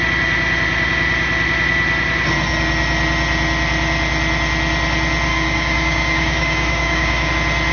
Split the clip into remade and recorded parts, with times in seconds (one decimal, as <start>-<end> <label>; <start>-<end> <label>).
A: 0.0-5.3 recorded; 5.3-7.3 remade; 7.3-7.7 recorded